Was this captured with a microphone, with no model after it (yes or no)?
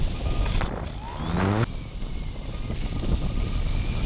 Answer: yes